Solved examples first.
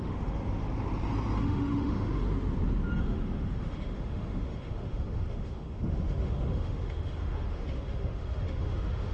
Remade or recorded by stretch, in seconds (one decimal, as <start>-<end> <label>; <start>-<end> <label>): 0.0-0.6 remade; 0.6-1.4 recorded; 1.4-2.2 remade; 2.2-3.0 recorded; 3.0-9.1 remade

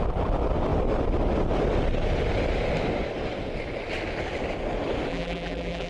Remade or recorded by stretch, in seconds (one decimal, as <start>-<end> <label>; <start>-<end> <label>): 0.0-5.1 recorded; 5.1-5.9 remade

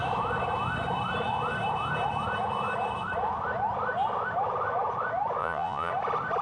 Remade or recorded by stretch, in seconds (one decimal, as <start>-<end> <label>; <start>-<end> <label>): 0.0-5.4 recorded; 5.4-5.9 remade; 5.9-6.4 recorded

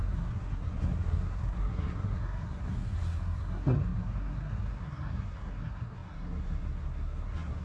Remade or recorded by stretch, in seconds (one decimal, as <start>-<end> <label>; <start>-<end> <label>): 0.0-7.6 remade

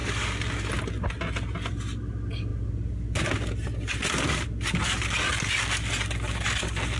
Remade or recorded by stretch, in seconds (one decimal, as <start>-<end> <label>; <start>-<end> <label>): 0.0-7.0 recorded

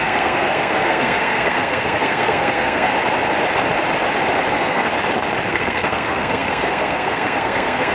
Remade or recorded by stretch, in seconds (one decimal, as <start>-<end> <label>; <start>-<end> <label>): 0.0-2.9 remade; 2.9-4.5 recorded; 4.5-4.9 remade; 4.9-5.5 recorded; 5.5-7.9 remade